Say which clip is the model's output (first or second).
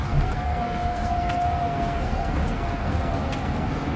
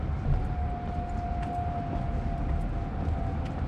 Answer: first